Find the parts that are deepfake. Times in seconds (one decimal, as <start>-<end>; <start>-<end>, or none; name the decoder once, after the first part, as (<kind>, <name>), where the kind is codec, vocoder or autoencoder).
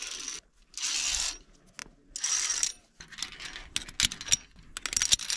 none